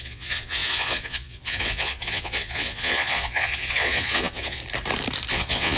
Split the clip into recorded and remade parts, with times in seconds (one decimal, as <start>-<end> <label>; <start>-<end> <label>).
0.0-4.6 remade; 4.6-5.3 recorded; 5.3-5.8 remade